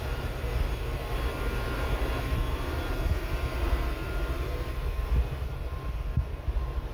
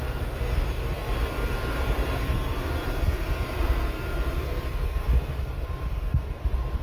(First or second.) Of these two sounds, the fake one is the second